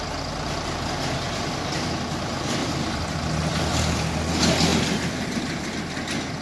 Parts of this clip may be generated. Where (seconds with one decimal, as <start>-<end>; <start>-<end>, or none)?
4.7-5.7